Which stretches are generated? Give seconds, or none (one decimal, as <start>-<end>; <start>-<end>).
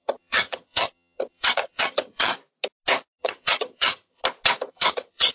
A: 0.0-2.3; 3.2-4.2; 4.7-5.3